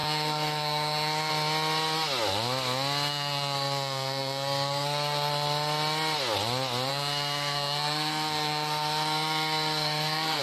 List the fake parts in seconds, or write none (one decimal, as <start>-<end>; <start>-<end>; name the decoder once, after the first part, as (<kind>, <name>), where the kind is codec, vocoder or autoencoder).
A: 0.0-1.3 (codec, SNAC); 3.1-5.3; 6.9-10.4